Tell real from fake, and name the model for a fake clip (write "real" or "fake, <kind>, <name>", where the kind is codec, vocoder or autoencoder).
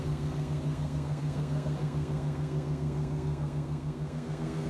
fake, codec, SNAC